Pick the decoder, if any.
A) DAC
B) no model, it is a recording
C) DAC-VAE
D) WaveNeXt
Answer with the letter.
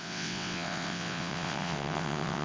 D